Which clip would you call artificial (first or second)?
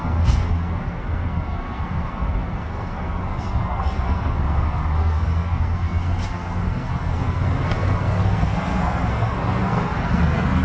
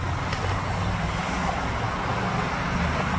first